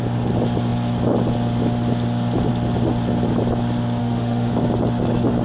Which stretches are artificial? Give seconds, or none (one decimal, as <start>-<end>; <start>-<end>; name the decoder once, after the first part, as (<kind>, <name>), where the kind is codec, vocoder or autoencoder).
4.0-4.5 (autoencoder, DAC-VAE)